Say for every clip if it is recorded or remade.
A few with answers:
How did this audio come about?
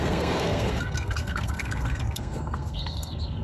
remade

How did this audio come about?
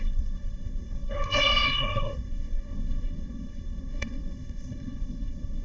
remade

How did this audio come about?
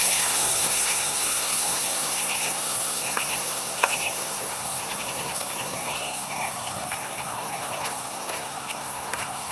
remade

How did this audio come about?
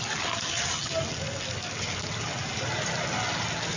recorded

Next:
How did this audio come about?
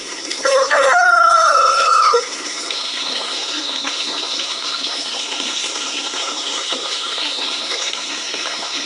remade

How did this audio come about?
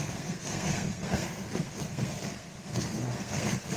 remade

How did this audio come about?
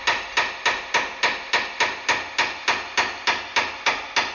recorded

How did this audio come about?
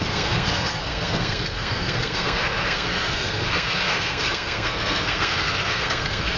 remade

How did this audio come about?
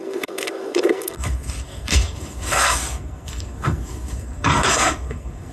remade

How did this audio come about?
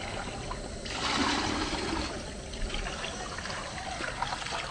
recorded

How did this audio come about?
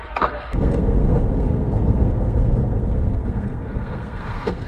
remade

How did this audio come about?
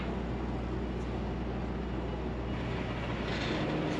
recorded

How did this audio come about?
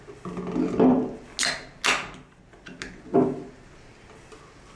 recorded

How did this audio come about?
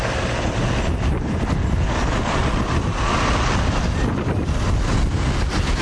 recorded